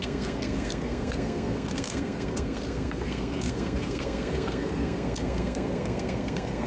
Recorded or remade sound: remade